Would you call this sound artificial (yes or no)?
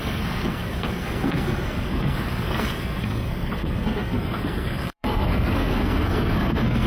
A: yes